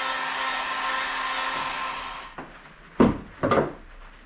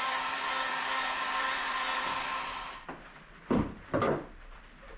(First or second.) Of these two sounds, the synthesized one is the second